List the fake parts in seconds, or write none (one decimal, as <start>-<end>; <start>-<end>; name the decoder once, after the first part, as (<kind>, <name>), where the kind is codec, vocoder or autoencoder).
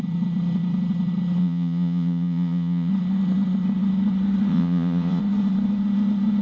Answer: 1.4-2.9 (vocoder, Vocos); 4.5-5.2